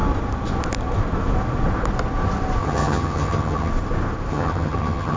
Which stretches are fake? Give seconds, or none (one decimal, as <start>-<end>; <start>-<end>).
2.6-3.7; 4.3-5.2